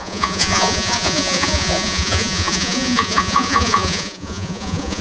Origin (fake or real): fake